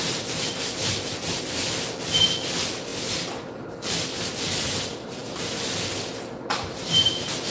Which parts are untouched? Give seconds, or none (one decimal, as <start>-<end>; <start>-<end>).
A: 0.0-7.5